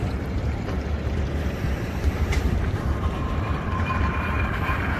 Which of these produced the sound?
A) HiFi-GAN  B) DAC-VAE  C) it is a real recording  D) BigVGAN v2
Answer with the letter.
D